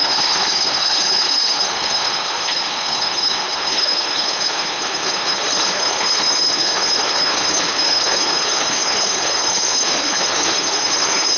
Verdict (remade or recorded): remade